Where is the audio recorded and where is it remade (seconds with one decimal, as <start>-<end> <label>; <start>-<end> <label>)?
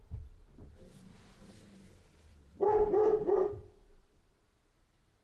0.0-2.3 recorded; 2.3-3.5 remade; 3.5-5.2 recorded